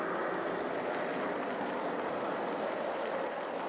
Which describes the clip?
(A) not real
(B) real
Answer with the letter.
B